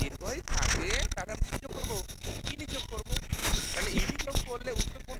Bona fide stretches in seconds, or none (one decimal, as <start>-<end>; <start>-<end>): 0.0-1.3; 1.9-5.2